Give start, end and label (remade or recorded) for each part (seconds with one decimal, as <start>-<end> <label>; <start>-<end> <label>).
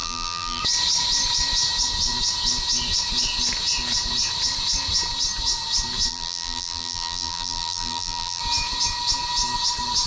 0.0-0.6 remade; 0.6-6.1 recorded; 6.1-8.4 remade; 8.4-10.1 recorded